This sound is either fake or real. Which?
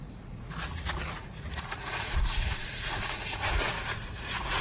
fake